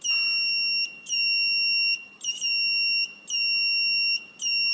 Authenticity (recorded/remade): recorded